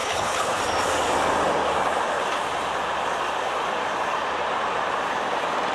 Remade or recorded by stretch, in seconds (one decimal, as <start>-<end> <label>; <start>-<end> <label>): 0.0-0.6 remade; 0.6-5.7 recorded